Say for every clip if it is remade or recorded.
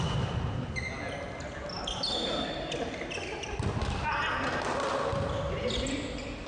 recorded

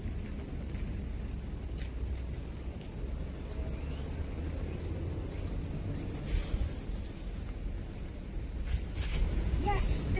recorded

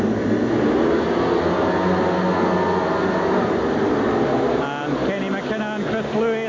recorded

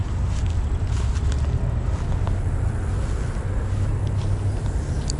recorded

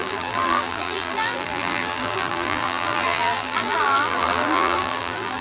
remade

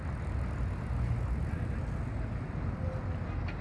recorded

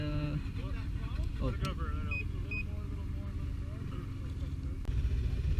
recorded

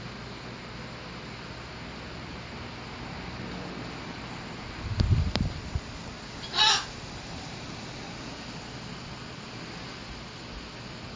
recorded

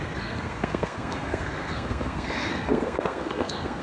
remade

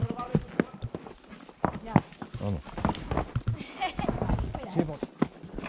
recorded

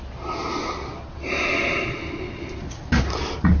recorded